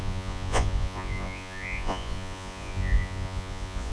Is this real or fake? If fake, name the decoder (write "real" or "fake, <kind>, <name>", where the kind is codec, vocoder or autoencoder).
fake, vocoder, Vocos